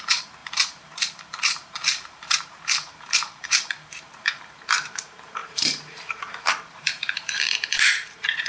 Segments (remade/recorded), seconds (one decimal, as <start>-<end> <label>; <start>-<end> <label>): 0.0-8.5 remade

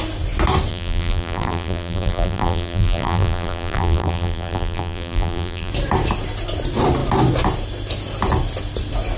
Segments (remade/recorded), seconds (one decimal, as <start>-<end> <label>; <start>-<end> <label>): 0.0-0.7 recorded; 0.7-5.7 remade; 5.7-9.2 recorded

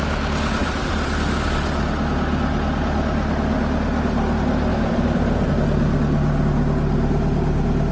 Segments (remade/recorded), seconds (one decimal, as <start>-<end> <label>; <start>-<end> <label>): 0.0-0.6 recorded; 0.6-1.4 remade; 1.4-4.7 recorded; 4.7-5.5 remade; 5.5-7.9 recorded

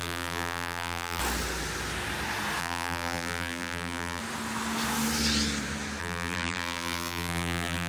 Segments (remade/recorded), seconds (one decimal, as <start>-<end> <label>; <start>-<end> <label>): 0.0-1.2 remade; 1.2-2.6 recorded; 2.6-4.2 remade; 4.2-6.0 recorded; 6.0-7.9 remade

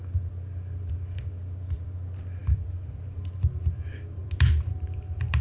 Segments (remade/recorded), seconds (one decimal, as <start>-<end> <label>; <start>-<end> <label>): 0.0-4.2 recorded; 4.2-5.4 remade